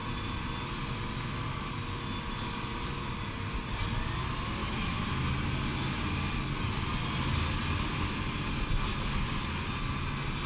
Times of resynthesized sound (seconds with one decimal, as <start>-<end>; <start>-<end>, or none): 4.6-5.3